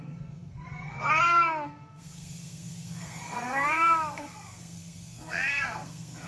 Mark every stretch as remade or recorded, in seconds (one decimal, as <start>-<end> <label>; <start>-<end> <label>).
0.0-6.3 remade